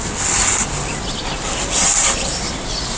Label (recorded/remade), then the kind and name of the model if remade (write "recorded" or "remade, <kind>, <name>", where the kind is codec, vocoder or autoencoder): recorded